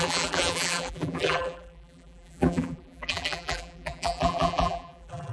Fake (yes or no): yes